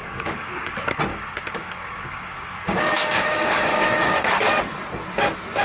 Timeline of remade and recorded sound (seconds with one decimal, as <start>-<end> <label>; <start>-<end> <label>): 0.0-0.7 remade; 0.7-1.1 recorded; 1.1-4.5 remade; 4.5-5.6 recorded